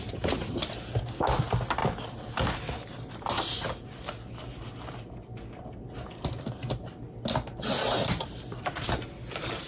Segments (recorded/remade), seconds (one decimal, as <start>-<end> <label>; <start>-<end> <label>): 0.0-9.7 recorded